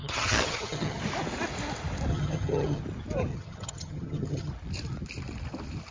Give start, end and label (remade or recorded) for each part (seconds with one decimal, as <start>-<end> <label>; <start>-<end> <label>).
0.0-1.0 remade; 1.0-2.1 recorded; 2.1-2.8 remade; 2.8-3.3 recorded; 3.3-4.5 remade; 4.5-5.9 recorded